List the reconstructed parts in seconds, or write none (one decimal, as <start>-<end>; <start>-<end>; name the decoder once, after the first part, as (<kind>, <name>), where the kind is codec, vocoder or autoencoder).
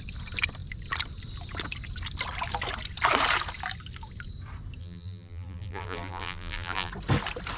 4.8-6.9 (vocoder, BigVGAN v2)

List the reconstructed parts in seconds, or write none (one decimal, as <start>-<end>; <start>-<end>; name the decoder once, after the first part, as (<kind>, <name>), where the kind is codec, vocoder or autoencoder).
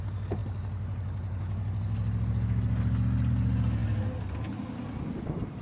none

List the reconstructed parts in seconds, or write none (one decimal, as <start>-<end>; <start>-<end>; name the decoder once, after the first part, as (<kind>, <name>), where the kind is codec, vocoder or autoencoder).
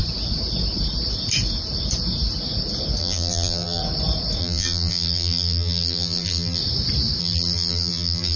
3.0-3.8 (vocoder, BigVGAN v2); 4.4-6.6; 7.2-8.4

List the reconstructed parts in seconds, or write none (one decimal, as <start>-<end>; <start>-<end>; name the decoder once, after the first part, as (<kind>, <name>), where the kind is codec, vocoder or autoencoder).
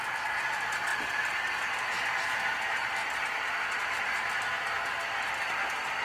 none